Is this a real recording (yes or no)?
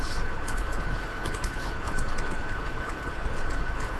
no